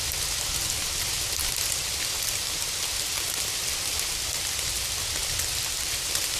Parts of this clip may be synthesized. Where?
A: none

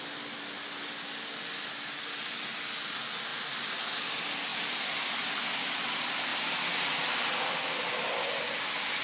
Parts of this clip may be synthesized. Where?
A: none

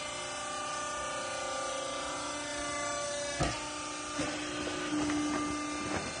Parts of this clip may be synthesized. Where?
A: none

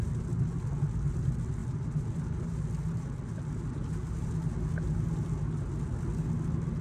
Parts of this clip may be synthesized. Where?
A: none

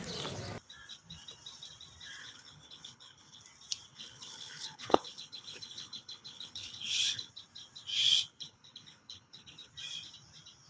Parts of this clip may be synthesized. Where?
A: 2.2-3.4 (codec, HILCodec); 3.9-7.3; 8.3-9.7

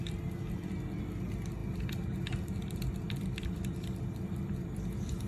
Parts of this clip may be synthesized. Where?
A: 1.6-4.8 (vocoder, BigVGAN v2)

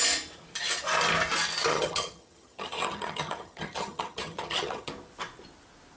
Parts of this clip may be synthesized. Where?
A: 1.7-4.9 (vocoder, HiFi-GAN)

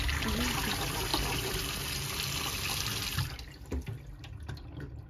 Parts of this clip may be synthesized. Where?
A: none